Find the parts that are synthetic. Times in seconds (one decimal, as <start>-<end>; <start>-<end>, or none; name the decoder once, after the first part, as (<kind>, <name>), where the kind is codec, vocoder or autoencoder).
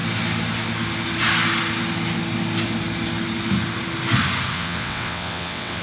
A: 4.5-5.8 (vocoder, WaveNeXt)